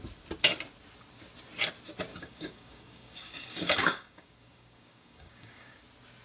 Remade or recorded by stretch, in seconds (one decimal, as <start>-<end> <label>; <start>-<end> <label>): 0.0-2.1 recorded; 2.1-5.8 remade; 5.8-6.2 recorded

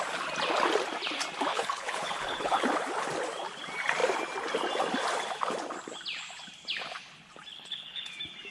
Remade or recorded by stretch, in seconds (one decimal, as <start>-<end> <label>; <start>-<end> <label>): 0.0-1.5 recorded; 1.5-2.7 remade; 2.7-7.5 recorded; 7.5-8.1 remade; 8.1-8.5 recorded

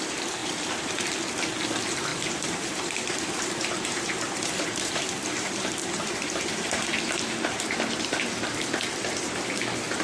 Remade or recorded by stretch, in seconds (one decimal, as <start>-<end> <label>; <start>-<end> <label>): 0.0-0.4 recorded; 0.4-1.1 remade; 1.1-2.1 recorded; 2.1-7.2 remade; 7.2-10.0 recorded

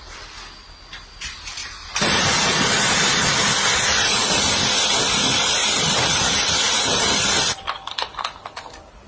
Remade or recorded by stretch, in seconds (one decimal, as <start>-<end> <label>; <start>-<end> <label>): 0.0-9.1 remade